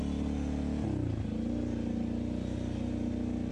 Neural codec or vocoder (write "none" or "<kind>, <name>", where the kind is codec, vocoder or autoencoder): none